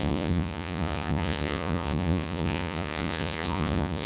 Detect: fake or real fake